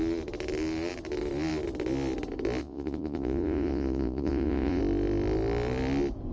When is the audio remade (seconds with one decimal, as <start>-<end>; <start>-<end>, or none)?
2.6-4.8